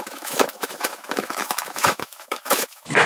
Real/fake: fake